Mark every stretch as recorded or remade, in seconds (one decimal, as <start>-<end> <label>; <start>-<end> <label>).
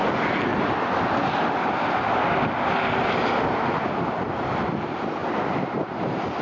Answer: 0.0-6.4 recorded